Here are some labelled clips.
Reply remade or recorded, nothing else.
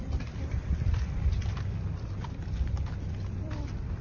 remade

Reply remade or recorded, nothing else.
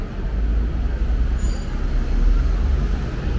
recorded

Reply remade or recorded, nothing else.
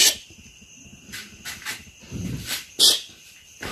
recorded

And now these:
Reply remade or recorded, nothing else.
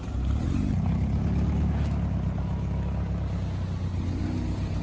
recorded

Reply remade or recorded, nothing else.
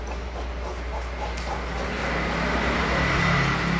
recorded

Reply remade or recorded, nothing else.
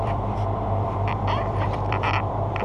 remade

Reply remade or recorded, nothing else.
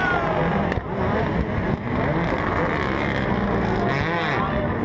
recorded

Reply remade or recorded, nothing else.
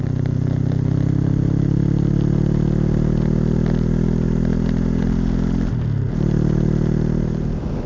recorded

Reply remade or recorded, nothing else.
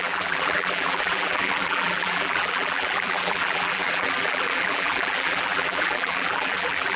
remade